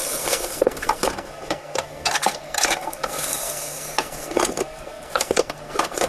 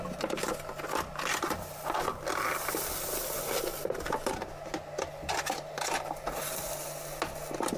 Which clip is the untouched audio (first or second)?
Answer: second